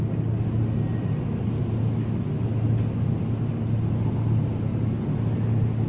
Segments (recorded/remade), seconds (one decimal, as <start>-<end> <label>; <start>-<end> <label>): 0.0-1.0 recorded; 1.0-1.6 remade; 1.6-5.9 recorded